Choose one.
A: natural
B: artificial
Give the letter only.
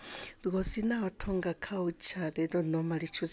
A